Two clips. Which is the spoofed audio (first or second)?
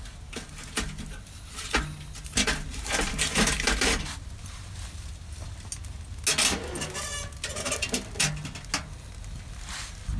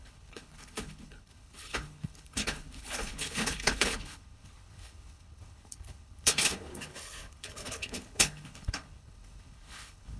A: second